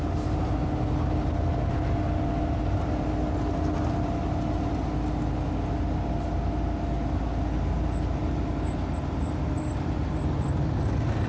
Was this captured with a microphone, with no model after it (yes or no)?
yes